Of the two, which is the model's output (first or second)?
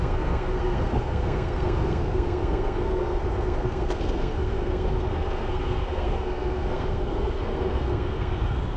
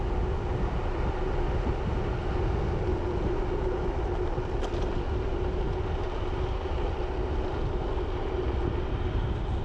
first